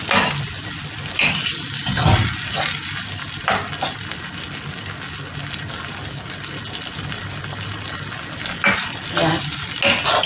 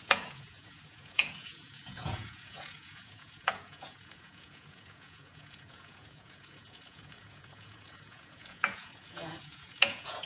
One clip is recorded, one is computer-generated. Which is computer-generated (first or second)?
second